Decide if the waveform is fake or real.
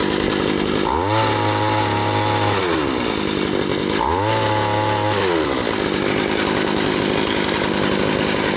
real